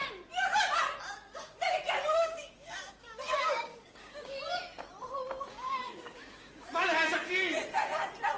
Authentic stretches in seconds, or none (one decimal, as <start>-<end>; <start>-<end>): 0.0-2.2; 4.4-5.5; 6.7-8.4